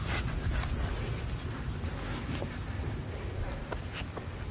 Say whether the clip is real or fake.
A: real